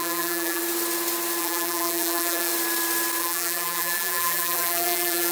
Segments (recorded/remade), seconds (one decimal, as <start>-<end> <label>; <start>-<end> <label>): 0.0-0.6 remade; 0.6-1.4 recorded; 1.4-2.5 remade; 2.5-3.2 recorded; 3.2-5.3 remade